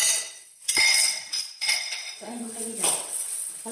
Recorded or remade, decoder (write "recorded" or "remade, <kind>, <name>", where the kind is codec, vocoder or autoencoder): remade, vocoder, WaveNeXt